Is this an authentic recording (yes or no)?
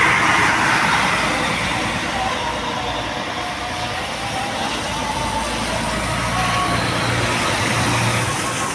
yes